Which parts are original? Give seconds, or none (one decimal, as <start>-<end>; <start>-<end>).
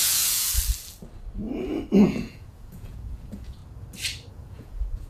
0.5-1.9; 3.6-4.3